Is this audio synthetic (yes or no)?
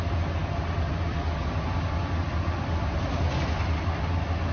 no